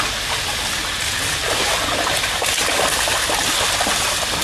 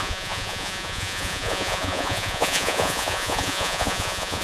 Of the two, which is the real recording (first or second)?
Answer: first